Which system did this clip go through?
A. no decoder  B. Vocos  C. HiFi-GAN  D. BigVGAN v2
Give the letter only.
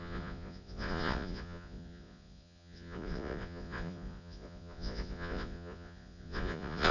B